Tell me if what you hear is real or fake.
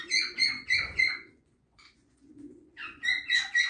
fake